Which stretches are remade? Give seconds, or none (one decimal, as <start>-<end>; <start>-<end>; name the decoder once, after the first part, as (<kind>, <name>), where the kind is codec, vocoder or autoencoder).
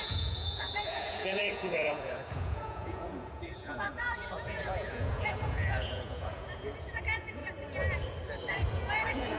0.0-7.4 (vocoder, Vocos); 8.7-9.4